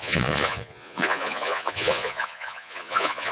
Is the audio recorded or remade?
remade